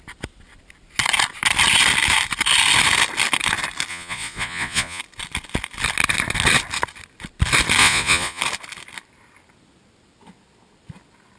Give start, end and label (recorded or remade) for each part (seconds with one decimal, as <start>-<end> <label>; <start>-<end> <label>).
0.0-3.9 recorded; 3.9-5.0 remade; 5.0-7.8 recorded; 7.8-8.4 remade; 8.4-11.4 recorded